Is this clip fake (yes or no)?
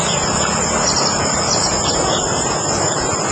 no